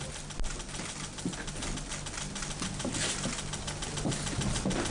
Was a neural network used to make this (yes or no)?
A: no